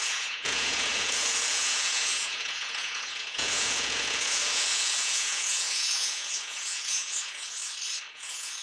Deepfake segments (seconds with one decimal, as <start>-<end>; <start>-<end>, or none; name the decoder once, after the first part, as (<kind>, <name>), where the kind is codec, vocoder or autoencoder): 0.0-7.6 (vocoder, Vocos); 8.1-8.6